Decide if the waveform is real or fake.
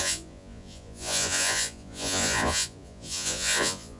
fake